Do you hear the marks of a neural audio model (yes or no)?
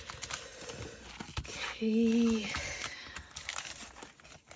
no